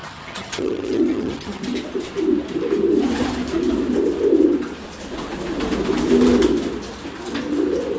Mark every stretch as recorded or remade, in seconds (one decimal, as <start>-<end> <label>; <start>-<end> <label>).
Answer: 0.0-1.6 remade; 1.6-8.0 recorded